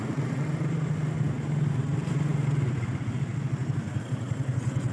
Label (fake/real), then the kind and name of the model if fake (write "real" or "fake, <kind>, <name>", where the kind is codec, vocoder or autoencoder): real